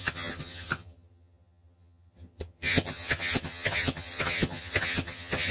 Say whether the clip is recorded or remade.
remade